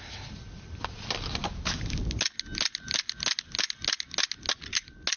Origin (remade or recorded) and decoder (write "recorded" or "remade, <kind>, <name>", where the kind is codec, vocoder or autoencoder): recorded